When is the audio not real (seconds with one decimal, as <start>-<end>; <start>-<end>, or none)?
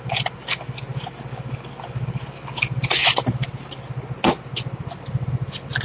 none